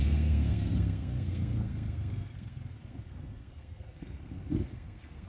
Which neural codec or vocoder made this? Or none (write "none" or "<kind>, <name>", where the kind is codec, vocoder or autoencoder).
codec, SNAC